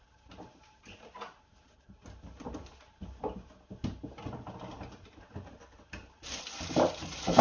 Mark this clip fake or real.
real